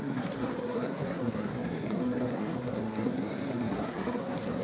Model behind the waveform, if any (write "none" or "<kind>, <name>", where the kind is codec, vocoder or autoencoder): codec, SNAC